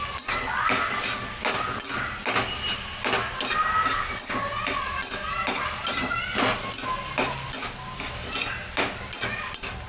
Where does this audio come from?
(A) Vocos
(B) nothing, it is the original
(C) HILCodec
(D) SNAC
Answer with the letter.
B